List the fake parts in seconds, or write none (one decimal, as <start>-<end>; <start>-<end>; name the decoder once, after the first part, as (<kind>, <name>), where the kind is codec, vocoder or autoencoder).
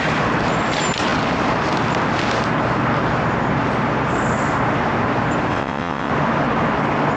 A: 5.5-6.1 (vocoder, WaveNeXt)